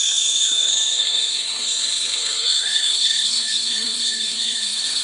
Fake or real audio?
fake